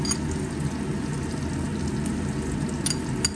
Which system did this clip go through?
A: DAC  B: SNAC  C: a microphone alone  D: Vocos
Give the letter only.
C